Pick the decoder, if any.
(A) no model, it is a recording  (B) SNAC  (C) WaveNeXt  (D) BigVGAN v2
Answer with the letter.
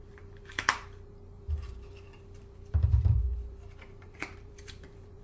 D